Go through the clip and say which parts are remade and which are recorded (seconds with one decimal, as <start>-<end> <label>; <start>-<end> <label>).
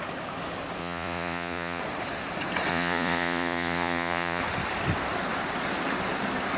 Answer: 0.0-0.8 recorded; 0.8-1.8 remade; 1.8-2.7 recorded; 2.7-4.4 remade; 4.4-6.6 recorded